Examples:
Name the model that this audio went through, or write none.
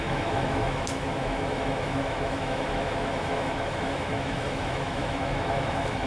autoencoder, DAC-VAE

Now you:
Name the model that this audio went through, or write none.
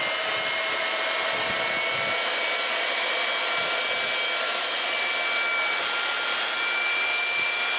none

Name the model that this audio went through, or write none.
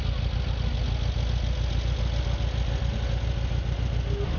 none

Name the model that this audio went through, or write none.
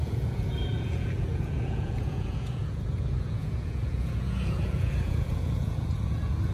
vocoder, Vocos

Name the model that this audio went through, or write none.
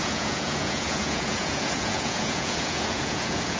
vocoder, Vocos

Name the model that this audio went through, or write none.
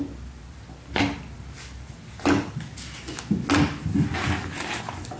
none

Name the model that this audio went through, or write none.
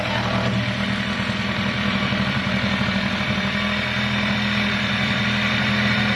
none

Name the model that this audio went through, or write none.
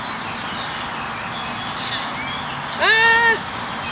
none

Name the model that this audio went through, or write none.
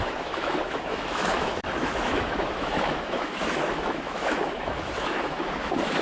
autoencoder, DAC-VAE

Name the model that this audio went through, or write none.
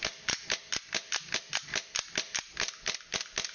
none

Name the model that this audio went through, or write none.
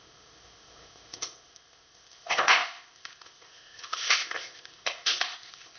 codec, ZipCodec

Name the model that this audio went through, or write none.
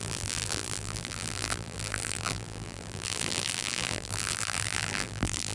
vocoder, BigVGAN v2